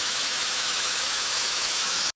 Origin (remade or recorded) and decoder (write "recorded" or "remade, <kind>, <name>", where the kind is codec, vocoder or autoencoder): remade, autoencoder, DAC-VAE